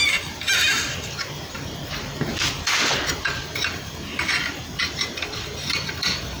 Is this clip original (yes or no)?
no